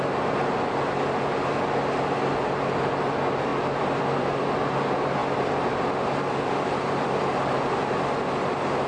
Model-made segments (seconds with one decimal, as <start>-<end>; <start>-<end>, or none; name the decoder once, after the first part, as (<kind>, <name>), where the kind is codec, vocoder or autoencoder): none